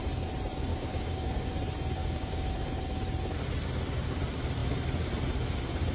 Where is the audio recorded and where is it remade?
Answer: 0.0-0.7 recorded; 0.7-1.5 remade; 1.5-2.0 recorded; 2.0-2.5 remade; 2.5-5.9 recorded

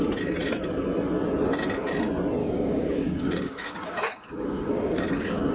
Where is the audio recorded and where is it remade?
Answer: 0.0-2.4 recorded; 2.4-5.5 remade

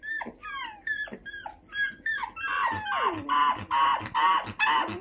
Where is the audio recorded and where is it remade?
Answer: 0.0-5.0 recorded

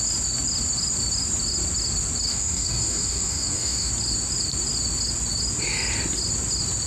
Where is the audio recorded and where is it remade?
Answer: 0.0-2.3 recorded; 2.3-3.9 remade; 3.9-6.9 recorded

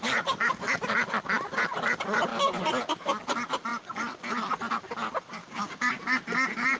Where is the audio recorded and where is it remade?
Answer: 0.0-5.4 recorded; 5.4-6.0 remade; 6.0-6.8 recorded

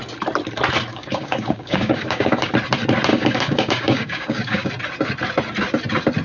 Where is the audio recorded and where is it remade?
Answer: 0.0-0.9 recorded; 0.9-2.5 remade; 2.5-3.1 recorded; 3.1-4.7 remade; 4.7-6.2 recorded